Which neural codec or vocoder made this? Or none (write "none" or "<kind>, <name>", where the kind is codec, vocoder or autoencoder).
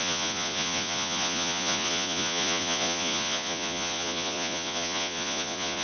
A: vocoder, Vocos